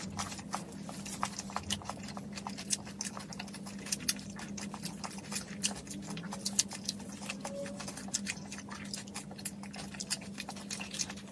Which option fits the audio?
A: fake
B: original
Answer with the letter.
B